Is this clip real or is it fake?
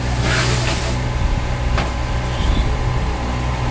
real